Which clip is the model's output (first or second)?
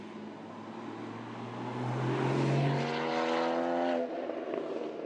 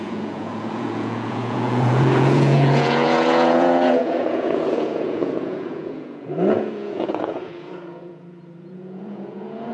second